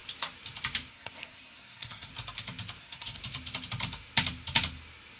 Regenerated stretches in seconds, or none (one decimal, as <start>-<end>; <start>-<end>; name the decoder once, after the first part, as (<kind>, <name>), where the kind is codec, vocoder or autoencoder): 0.9-2.1 (codec, SNAC); 2.8-3.2